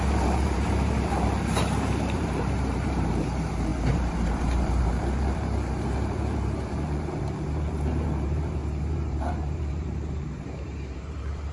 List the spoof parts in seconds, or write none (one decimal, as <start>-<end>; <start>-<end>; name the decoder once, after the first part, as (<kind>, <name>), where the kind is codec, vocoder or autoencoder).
0.0-11.5 (vocoder, BigVGAN v2)